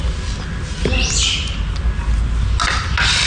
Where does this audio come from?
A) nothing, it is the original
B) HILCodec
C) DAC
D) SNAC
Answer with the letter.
A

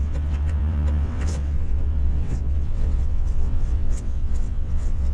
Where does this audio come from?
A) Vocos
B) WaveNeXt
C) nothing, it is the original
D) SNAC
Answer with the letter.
B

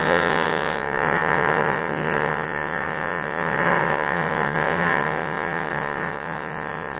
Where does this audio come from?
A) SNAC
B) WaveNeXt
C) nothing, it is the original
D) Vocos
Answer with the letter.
B